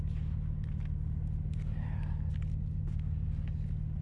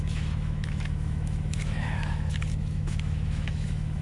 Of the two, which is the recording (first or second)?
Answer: first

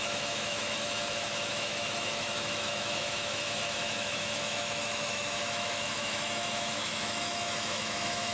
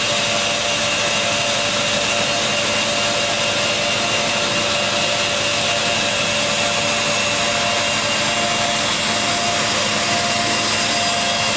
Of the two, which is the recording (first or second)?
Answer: second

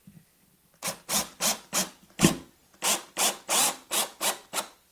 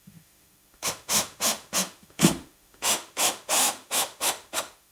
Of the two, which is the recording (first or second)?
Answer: first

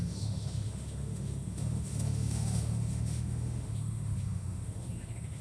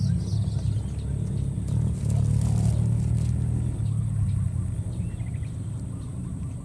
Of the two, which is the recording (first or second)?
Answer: second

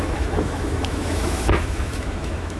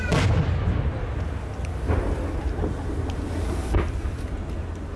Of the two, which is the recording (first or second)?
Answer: second